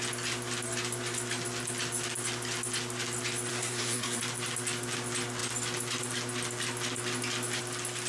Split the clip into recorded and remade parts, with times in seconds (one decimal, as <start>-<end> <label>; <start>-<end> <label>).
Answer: 0.0-3.5 recorded; 3.5-4.2 remade; 4.2-8.1 recorded